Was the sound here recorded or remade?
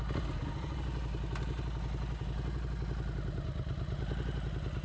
recorded